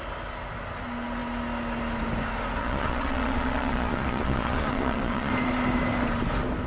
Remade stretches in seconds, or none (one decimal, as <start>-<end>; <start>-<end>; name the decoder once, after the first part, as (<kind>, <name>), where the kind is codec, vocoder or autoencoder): 2.6-5.3 (vocoder, Vocos)